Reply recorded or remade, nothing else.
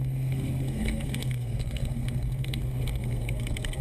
remade